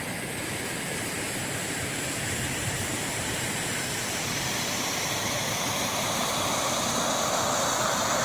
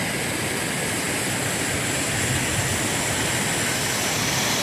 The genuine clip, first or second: second